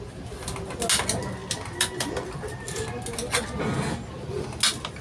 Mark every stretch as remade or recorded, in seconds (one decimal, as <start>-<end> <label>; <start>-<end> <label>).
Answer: 0.0-5.0 recorded